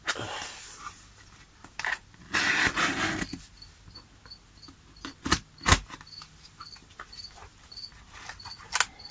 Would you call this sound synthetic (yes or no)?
no